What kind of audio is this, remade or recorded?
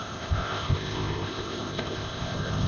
remade